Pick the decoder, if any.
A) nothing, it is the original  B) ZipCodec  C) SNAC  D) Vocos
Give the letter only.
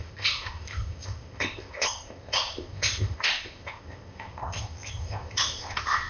B